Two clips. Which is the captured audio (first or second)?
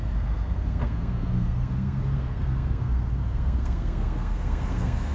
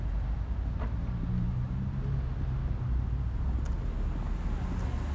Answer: second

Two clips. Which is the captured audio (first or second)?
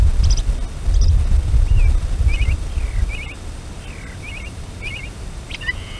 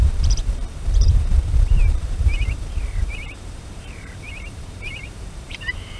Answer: first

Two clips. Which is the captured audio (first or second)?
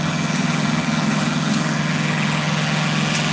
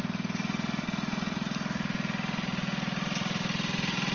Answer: second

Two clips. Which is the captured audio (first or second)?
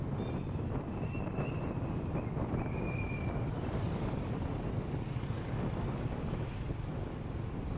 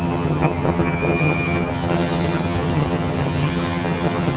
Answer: first